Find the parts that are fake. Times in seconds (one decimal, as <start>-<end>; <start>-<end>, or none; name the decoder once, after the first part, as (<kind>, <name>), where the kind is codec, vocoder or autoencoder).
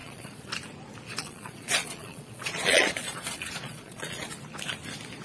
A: 0.0-0.5 (vocoder, Vocos); 1.2-4.3